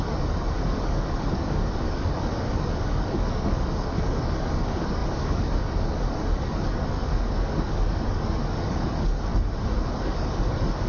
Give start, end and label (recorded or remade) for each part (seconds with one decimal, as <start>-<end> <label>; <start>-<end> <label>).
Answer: 0.0-9.3 remade; 9.3-9.9 recorded; 9.9-10.9 remade